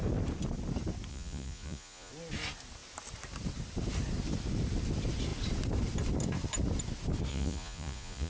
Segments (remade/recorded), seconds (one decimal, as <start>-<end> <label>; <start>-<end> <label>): 0.0-1.1 recorded; 1.1-2.1 remade; 2.1-7.3 recorded; 7.3-8.3 remade